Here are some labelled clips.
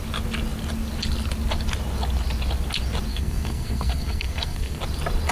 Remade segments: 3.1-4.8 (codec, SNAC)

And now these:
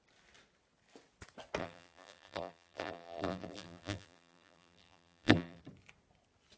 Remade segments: 1.6-5.6 (vocoder, BigVGAN v2)

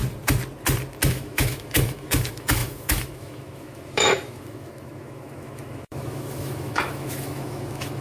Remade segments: 1.1-8.0 (autoencoder, DAC-VAE)

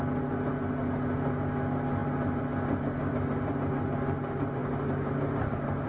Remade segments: none